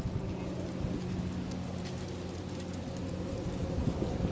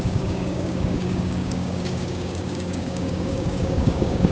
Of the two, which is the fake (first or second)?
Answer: second